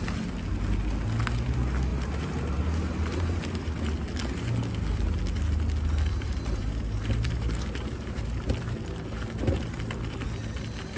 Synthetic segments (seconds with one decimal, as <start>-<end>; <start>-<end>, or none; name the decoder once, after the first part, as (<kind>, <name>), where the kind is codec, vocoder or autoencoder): 1.9-3.7 (vocoder, BigVGAN v2); 6.1-8.5